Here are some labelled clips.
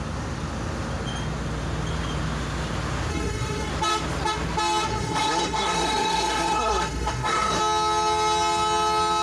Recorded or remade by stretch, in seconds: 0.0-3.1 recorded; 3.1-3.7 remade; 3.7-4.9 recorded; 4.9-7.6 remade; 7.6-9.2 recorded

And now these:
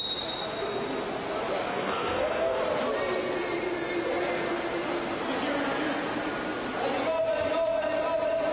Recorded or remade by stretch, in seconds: 0.0-1.7 recorded; 1.7-2.6 remade; 2.6-8.5 recorded